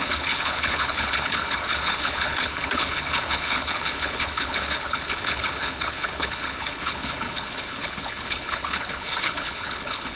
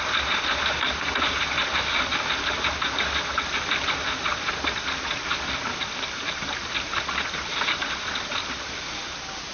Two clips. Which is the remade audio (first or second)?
first